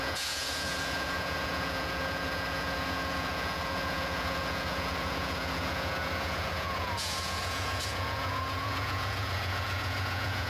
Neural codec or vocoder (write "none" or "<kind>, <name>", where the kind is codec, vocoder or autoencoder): vocoder, Vocos